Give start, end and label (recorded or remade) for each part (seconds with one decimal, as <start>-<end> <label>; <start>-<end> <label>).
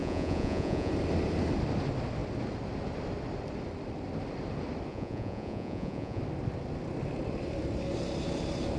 0.0-0.9 remade; 0.9-4.9 recorded; 4.9-6.2 remade; 6.2-8.8 recorded